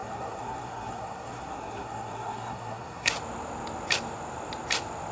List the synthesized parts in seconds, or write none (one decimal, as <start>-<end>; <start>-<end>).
0.0-3.1